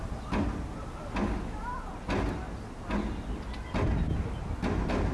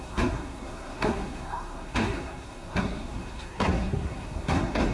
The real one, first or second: first